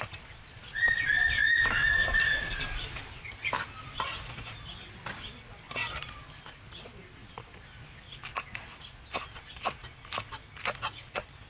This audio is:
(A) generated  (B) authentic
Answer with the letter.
B